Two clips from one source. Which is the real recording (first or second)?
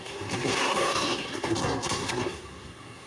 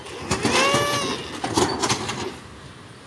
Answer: second